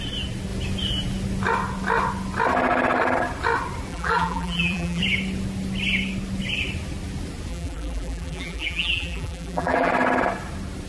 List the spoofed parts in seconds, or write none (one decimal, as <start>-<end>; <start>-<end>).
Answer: 3.9-5.0; 7.5-9.9